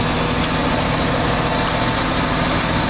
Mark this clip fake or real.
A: real